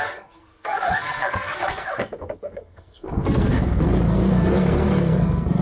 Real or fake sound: fake